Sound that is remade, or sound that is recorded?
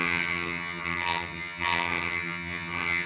remade